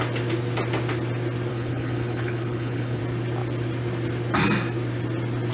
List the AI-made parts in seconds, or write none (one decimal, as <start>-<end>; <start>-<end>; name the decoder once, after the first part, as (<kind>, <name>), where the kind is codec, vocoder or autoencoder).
1.5-3.0 (codec, HILCodec)